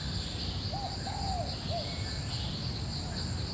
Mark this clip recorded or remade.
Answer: recorded